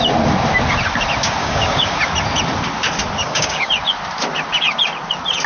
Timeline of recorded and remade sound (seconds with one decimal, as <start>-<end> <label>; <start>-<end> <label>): 0.0-1.4 recorded; 1.4-2.0 remade; 2.0-3.2 recorded; 3.2-3.7 remade; 3.7-5.5 recorded